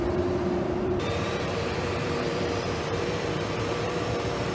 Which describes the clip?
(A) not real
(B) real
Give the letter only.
A